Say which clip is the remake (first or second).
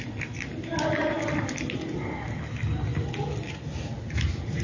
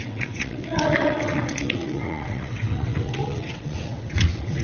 second